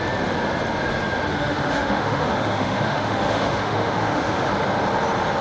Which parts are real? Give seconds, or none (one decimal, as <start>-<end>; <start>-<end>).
0.0-1.3; 4.5-5.4

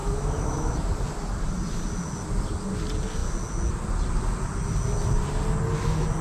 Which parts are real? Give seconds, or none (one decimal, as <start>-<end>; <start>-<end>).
0.7-6.2

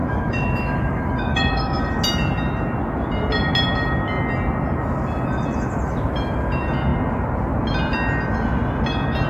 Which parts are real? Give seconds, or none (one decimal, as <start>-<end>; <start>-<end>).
1.8-9.3